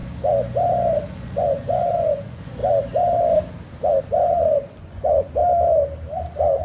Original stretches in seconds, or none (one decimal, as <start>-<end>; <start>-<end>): 0.0-1.1; 2.6-4.0; 5.4-6.6